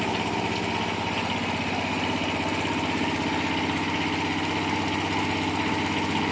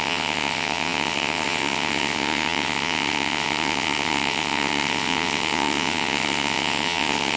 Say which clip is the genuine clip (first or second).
first